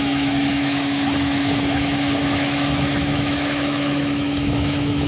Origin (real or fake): fake